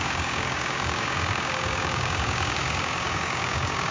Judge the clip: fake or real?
fake